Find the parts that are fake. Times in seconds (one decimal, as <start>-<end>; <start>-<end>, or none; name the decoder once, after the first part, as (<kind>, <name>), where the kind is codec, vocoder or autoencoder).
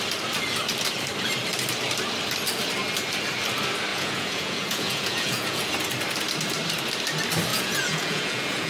3.9-5.7 (vocoder, Vocos); 7.5-8.7